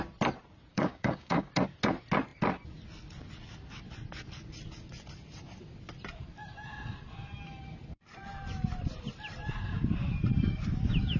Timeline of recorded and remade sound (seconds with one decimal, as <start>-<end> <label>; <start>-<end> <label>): 0.0-0.7 recorded; 0.7-1.5 remade; 1.5-11.2 recorded